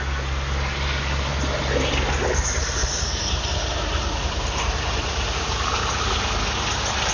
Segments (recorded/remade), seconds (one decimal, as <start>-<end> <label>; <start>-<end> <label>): 0.0-2.8 recorded; 2.8-6.0 remade; 6.0-7.1 recorded